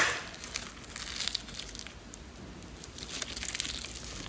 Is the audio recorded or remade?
recorded